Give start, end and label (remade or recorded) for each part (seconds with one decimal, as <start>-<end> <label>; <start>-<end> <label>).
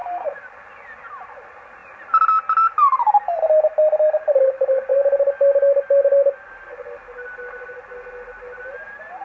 0.0-9.2 recorded